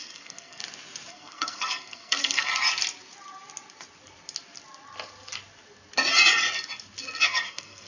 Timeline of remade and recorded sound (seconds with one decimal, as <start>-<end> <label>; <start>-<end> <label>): 0.0-0.6 remade; 0.6-1.1 recorded; 1.1-2.5 remade; 2.5-7.2 recorded; 7.2-7.9 remade